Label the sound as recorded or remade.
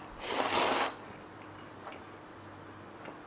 recorded